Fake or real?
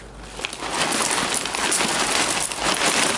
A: real